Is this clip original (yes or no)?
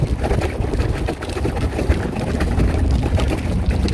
yes